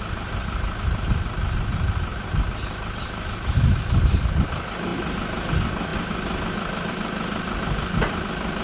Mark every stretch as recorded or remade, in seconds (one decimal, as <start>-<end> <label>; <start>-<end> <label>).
0.0-8.6 recorded